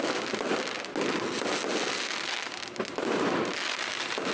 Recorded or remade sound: recorded